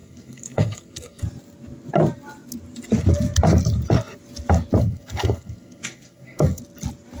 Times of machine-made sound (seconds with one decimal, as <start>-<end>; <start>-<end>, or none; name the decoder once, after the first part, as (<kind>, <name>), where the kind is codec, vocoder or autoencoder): 0.0-1.2 (codec, SNAC); 4.8-6.6

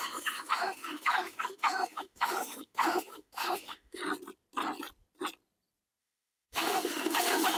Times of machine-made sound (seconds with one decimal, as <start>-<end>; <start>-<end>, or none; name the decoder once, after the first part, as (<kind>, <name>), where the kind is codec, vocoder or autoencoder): 0.0-4.0 (autoencoder, DAC-VAE); 6.0-7.6

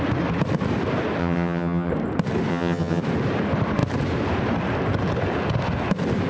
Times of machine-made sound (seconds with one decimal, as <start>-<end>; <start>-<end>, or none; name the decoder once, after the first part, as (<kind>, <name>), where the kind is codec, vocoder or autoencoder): 1.2-1.9 (vocoder, HiFi-GAN); 2.5-3.0